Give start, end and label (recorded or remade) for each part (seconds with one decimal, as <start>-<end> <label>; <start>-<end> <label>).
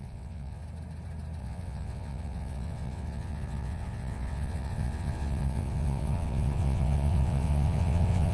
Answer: 0.0-0.6 remade; 0.6-1.4 recorded; 1.4-8.3 remade